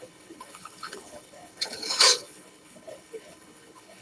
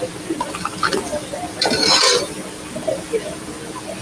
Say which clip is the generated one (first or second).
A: first